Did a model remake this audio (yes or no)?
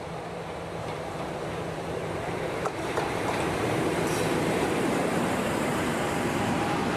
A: yes